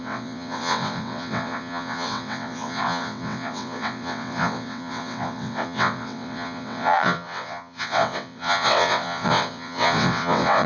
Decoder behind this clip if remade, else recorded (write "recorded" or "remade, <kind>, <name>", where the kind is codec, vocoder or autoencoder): remade, vocoder, WaveNeXt